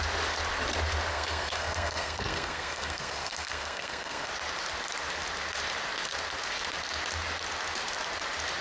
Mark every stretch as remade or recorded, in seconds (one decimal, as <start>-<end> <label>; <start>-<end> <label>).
0.0-1.1 recorded; 1.1-4.3 remade; 4.3-8.6 recorded